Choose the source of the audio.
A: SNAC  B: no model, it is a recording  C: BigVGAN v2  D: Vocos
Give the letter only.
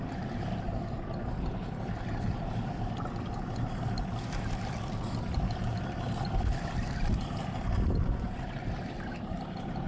B